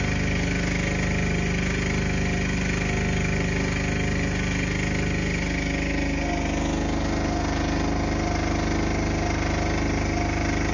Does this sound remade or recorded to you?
recorded